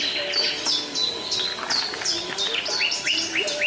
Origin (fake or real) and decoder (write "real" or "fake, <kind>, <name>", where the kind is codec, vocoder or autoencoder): real